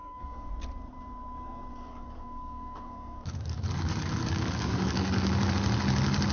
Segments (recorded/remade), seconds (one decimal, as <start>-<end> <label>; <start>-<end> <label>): 0.0-0.5 remade; 0.5-1.7 recorded; 1.7-5.5 remade; 5.5-6.3 recorded